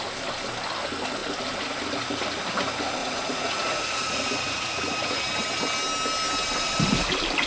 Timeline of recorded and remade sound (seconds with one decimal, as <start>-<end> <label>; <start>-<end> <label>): 0.0-3.0 recorded; 3.0-5.3 remade; 5.3-7.5 recorded